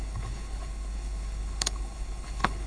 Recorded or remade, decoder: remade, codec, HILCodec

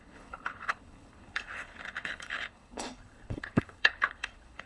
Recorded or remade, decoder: remade, codec, HILCodec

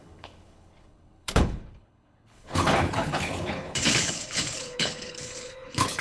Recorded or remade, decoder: remade, codec, HILCodec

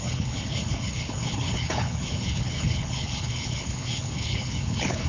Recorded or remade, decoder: remade, codec, HILCodec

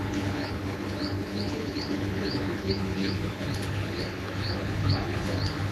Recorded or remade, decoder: remade, codec, HILCodec